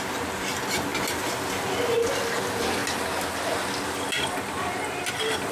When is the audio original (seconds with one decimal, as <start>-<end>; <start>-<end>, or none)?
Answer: 0.0-5.5